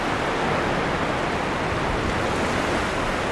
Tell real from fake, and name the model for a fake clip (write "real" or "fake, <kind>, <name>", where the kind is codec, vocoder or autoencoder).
real